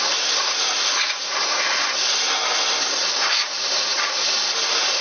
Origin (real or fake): real